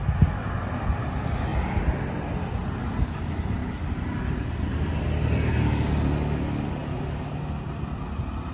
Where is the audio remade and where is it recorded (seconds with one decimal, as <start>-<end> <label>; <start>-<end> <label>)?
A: 0.0-8.5 recorded

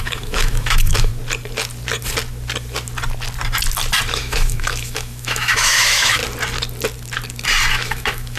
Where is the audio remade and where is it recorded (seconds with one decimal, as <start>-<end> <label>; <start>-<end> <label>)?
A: 0.0-1.1 remade; 1.1-4.2 recorded; 4.2-6.2 remade; 6.2-7.7 recorded; 7.7-8.4 remade

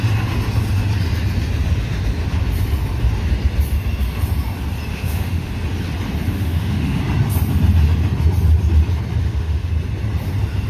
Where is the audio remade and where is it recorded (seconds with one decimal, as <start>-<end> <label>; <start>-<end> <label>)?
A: 0.0-4.9 recorded; 4.9-5.5 remade; 5.5-6.3 recorded; 6.3-7.0 remade; 7.0-9.2 recorded; 9.2-9.7 remade; 9.7-10.7 recorded

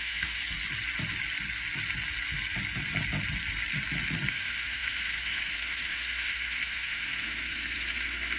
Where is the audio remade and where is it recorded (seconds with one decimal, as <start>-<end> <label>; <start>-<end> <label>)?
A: 0.0-0.4 remade; 0.4-4.3 recorded; 4.3-8.4 remade